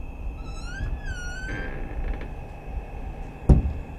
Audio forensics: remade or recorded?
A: recorded